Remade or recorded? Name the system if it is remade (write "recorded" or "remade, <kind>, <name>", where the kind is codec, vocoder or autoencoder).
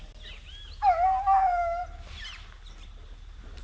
recorded